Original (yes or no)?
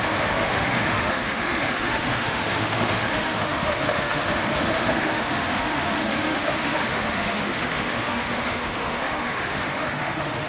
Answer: no